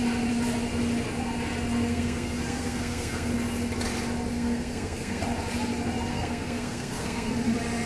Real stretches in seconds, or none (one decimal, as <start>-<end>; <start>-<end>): 0.0-1.9; 3.3-4.3; 5.2-6.1; 7.3-7.9